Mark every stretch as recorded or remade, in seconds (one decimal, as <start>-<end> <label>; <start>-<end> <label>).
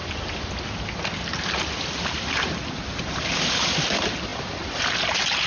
0.0-5.5 recorded